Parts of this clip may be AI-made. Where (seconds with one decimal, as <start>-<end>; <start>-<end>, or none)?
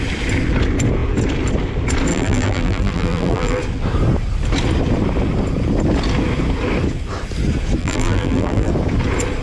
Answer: 2.1-3.6; 7.8-8.7